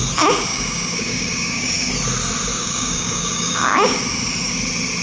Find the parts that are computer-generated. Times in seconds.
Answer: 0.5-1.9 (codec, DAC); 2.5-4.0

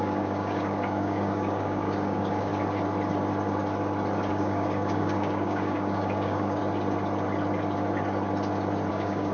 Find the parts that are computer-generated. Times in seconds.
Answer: 0.0-2.5 (codec, DAC); 4.3-6.6; 8.9-9.3